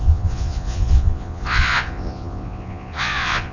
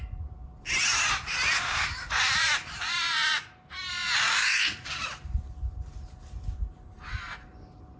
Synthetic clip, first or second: first